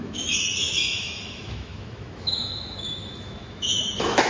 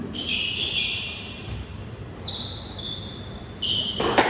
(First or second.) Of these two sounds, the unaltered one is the second